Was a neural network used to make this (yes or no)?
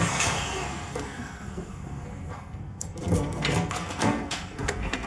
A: yes